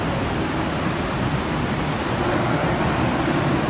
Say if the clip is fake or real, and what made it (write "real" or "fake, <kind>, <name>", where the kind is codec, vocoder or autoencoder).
real